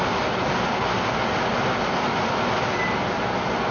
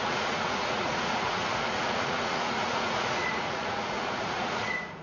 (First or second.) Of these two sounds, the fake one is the second